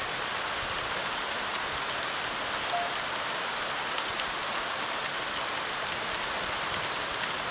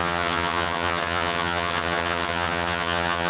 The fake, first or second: second